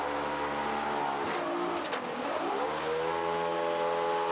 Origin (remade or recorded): recorded